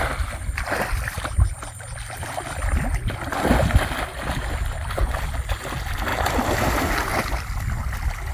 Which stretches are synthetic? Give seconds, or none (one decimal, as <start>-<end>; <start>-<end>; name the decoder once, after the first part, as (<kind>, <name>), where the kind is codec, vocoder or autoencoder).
none